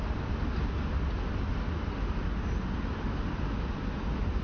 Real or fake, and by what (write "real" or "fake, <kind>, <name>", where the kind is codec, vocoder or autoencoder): real